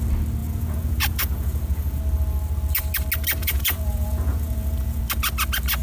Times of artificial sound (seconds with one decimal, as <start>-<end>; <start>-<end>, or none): 0.4-2.0; 3.4-5.0